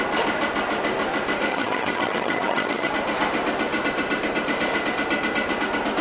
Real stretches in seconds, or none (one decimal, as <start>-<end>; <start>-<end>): 0.0-1.5; 2.9-6.0